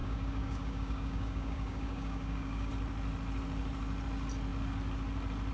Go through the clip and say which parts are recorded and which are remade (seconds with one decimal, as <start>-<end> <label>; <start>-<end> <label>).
0.0-2.7 remade; 2.7-5.5 recorded